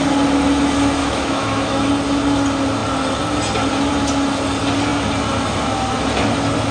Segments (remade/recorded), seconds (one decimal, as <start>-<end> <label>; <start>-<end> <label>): 0.0-1.0 recorded; 1.0-1.9 remade; 1.9-6.7 recorded